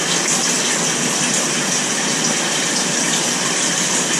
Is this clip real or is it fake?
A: real